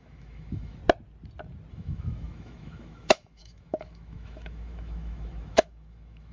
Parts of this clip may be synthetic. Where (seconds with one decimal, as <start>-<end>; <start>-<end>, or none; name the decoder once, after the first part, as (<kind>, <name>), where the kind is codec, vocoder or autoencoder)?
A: 0.0-0.8 (autoencoder, DAC-VAE); 1.7-6.3